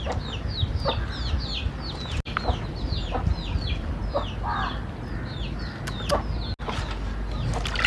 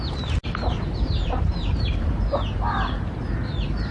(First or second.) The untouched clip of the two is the first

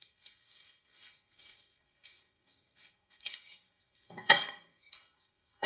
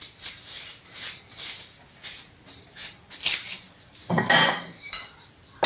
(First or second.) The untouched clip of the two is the second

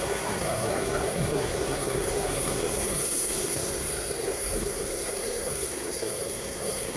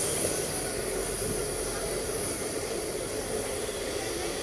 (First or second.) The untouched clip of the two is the second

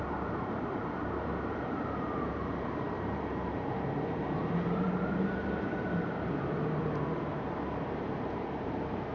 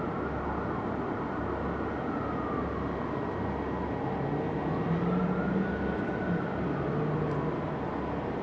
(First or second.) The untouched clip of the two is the second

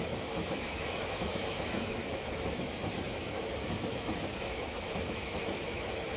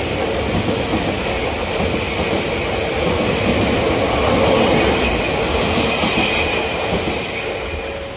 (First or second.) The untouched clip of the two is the second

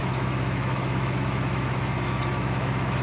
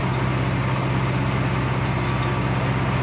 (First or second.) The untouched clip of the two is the second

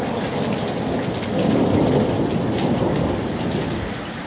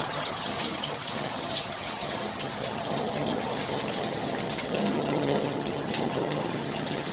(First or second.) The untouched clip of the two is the first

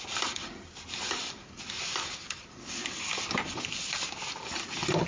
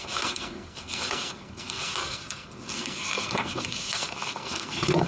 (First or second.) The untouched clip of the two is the first